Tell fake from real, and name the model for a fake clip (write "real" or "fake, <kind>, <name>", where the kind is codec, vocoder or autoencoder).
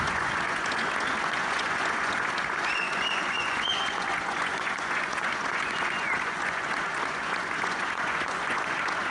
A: fake, vocoder, Vocos